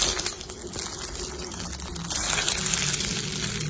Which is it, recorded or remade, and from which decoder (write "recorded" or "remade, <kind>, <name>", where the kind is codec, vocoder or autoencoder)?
recorded